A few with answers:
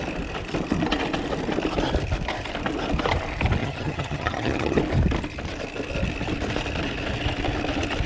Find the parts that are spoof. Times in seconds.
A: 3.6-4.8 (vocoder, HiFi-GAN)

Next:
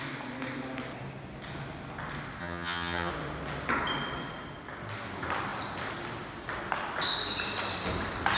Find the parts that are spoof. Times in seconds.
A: 2.4-3.1 (vocoder, HiFi-GAN)